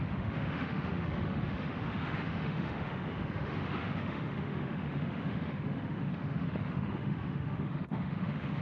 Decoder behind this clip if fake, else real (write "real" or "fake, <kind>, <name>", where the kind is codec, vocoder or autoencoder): fake, autoencoder, DAC-VAE